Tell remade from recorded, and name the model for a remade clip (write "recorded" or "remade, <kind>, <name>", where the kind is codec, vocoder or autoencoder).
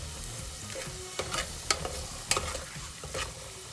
recorded